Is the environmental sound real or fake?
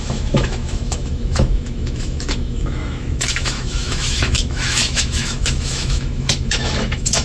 fake